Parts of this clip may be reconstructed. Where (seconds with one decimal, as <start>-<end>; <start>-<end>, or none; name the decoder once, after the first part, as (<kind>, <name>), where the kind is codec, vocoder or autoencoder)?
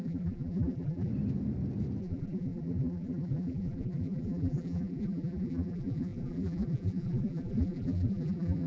0.0-1.1 (vocoder, BigVGAN v2); 2.0-8.7